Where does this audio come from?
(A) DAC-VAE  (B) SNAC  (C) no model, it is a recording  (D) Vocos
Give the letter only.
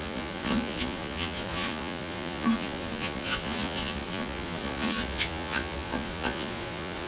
D